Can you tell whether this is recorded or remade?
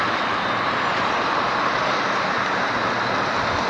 recorded